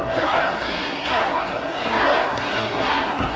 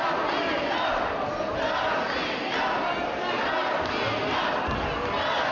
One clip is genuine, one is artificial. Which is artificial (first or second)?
first